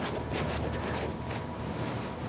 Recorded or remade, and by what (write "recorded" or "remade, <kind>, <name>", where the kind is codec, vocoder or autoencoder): recorded